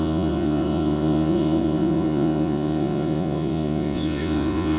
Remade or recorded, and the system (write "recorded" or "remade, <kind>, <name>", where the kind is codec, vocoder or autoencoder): remade, vocoder, Vocos